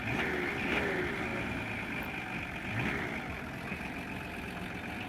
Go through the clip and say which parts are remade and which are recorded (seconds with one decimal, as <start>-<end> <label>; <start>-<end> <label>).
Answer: 0.0-5.1 recorded